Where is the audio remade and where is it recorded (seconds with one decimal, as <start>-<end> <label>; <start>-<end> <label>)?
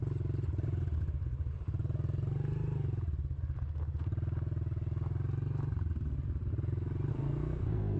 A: 0.0-7.1 recorded; 7.1-8.0 remade